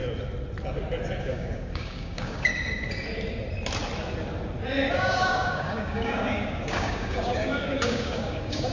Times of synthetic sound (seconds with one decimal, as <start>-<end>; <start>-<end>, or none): 1.2-2.5; 4.9-8.7